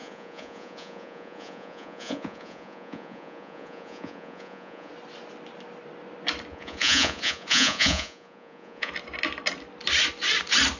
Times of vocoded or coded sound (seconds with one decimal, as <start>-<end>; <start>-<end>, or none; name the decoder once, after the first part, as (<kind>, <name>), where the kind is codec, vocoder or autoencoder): 0.0-4.9 (vocoder, Vocos); 6.5-8.9